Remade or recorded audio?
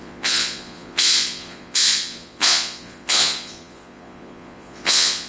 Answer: remade